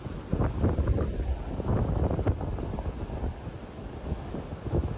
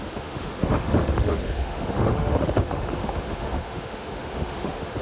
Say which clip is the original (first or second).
first